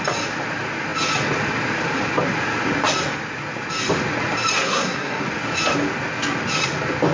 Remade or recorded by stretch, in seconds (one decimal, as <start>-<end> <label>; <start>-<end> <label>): 0.0-4.6 recorded; 4.6-5.2 remade; 5.2-7.1 recorded